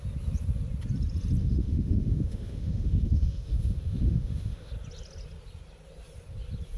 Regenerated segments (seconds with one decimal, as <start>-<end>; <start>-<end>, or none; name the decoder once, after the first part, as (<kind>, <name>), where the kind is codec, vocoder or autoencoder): 1.4-4.7 (autoencoder, DAC-VAE)